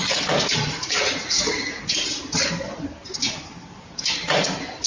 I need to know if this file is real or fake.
real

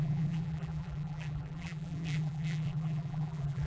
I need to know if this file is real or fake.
fake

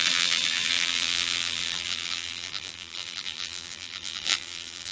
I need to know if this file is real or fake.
fake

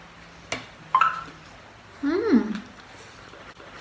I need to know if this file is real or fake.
real